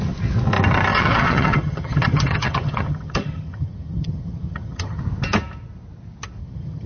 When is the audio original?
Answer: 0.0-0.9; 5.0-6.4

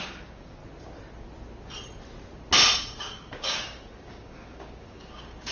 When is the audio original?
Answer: 0.6-3.0

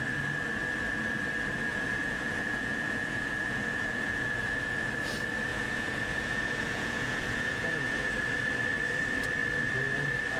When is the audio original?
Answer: 0.0-1.7; 4.9-5.5; 8.1-10.4